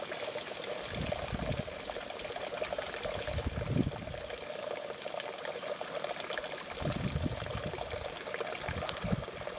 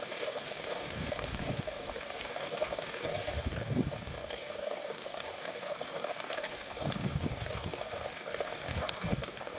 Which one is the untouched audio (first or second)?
first